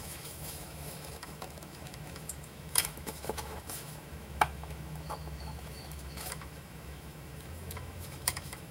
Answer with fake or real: fake